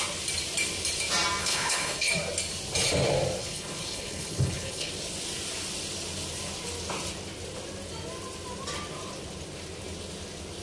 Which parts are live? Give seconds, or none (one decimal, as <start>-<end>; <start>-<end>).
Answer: 0.0-1.4; 2.1-3.4; 4.9-10.6